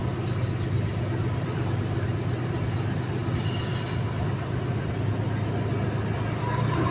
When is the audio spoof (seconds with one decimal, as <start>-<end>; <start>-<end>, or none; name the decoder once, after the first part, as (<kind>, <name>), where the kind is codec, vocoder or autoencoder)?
none